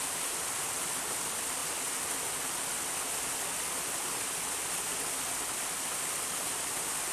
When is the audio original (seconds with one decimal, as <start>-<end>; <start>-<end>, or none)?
0.0-7.1

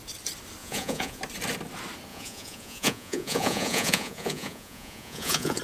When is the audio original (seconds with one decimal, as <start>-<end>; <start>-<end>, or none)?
0.0-0.6; 1.2-2.1

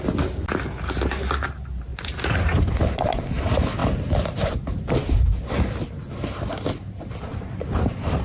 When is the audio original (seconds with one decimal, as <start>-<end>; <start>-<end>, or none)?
0.0-1.9; 3.2-7.3